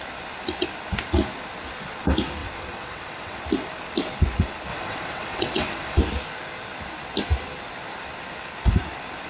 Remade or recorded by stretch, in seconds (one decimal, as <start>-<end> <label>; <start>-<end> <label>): 0.0-2.4 recorded; 2.4-3.4 remade; 3.4-4.7 recorded; 4.7-6.0 remade; 6.0-9.3 recorded